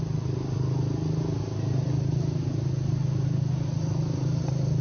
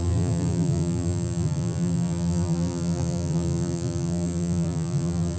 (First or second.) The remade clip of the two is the second